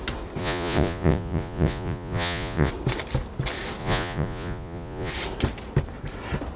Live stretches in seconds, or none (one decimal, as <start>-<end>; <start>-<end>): 0.0-0.4; 2.7-3.8; 5.1-6.6